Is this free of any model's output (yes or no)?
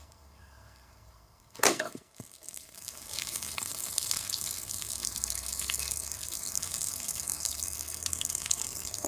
no